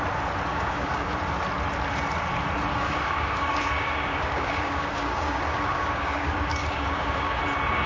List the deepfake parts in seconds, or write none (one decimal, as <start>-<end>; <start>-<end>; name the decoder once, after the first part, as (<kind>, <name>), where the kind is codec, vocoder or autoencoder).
0.5-1.1 (codec, DAC); 2.7-7.4